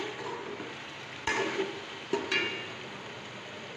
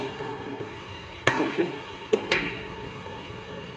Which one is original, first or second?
first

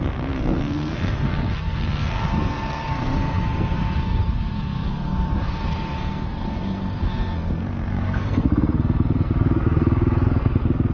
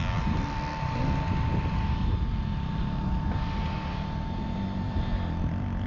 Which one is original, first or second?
second